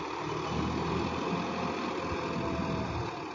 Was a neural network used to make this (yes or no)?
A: no